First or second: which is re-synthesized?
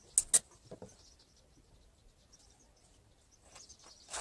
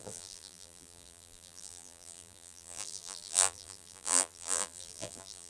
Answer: second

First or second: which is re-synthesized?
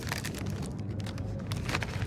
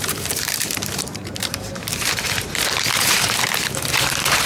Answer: second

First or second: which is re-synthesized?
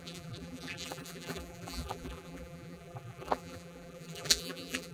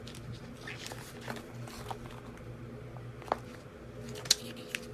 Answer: first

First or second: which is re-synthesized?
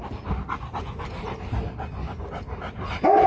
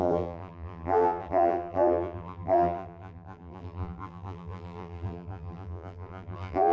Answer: second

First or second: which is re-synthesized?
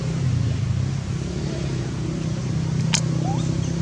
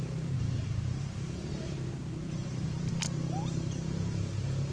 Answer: second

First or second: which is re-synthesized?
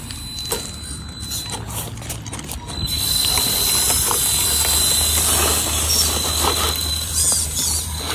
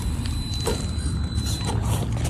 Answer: second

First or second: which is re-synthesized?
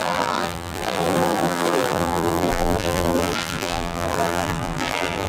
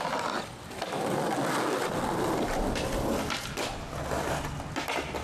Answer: first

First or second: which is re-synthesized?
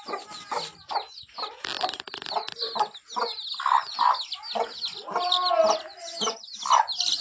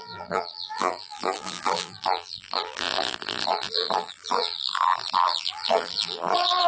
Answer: second